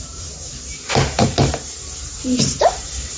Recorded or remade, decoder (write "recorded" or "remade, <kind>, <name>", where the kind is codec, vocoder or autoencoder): remade, vocoder, BigVGAN v2